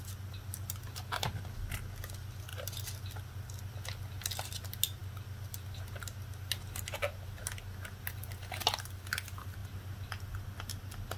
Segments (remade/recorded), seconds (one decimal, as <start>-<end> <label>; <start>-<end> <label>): 0.0-11.2 recorded